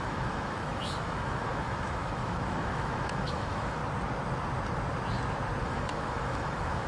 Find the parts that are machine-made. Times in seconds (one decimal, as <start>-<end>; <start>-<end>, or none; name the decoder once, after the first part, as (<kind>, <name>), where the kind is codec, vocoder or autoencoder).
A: 0.0-3.8 (autoencoder, DAC-VAE); 5.6-6.9